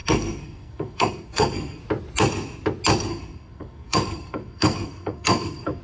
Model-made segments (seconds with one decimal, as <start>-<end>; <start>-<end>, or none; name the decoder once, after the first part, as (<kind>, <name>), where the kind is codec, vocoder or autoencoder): 0.0-1.8 (codec, SNAC); 3.1-5.8